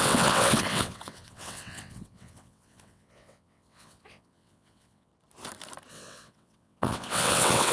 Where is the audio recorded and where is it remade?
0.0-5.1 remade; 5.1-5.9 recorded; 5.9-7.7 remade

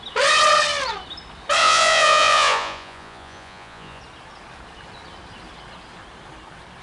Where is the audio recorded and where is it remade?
0.0-1.6 recorded; 1.6-4.0 remade; 4.0-6.8 recorded

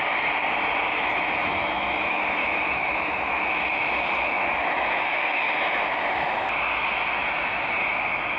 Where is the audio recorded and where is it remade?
0.0-1.4 recorded; 1.4-5.5 remade; 5.5-7.2 recorded; 7.2-7.8 remade; 7.8-8.4 recorded

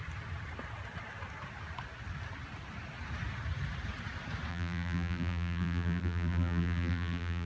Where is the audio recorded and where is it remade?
0.0-4.5 recorded; 4.5-7.5 remade